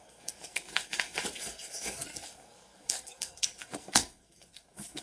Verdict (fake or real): fake